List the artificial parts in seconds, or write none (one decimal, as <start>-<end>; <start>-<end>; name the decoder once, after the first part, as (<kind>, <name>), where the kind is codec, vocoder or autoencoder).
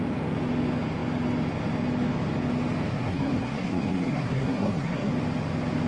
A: 2.9-5.1 (codec, SNAC)